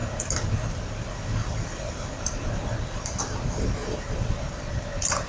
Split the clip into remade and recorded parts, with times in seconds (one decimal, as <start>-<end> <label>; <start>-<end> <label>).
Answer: 0.0-5.3 remade